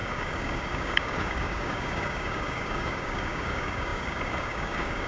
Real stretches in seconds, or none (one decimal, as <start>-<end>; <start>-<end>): none